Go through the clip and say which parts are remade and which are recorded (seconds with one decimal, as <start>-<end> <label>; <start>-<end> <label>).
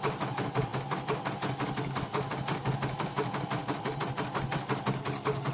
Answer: 0.0-5.5 recorded